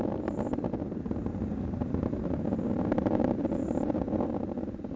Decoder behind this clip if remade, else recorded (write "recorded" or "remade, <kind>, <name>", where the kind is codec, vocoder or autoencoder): remade, vocoder, BigVGAN v2